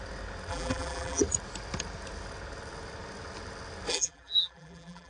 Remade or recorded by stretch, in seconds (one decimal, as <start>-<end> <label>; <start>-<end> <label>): 0.0-0.5 recorded; 0.5-1.2 remade; 1.2-3.9 recorded; 3.9-5.1 remade